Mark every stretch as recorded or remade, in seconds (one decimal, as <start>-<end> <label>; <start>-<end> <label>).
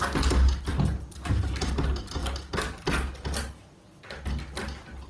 0.0-5.1 recorded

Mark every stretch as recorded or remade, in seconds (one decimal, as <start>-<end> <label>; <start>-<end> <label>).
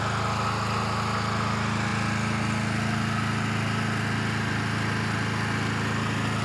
0.0-6.4 recorded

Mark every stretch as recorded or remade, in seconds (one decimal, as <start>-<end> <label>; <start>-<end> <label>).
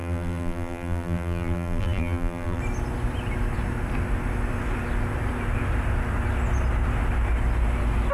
0.0-2.6 remade; 2.6-8.1 recorded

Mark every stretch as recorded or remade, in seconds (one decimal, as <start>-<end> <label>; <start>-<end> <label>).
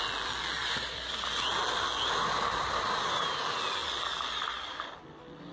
0.0-0.6 recorded; 0.6-1.5 remade; 1.5-5.5 recorded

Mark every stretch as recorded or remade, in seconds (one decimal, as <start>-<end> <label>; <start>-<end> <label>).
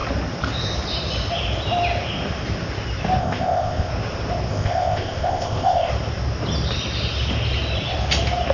0.0-3.2 recorded; 3.2-3.9 remade; 3.9-4.5 recorded; 4.5-5.9 remade; 5.9-8.5 recorded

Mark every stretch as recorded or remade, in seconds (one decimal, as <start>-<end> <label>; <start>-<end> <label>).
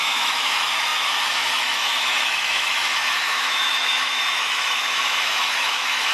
0.0-6.1 remade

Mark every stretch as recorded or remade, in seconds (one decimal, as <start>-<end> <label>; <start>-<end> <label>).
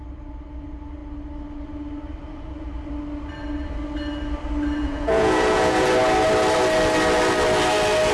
0.0-4.8 recorded; 4.8-5.9 remade; 5.9-8.1 recorded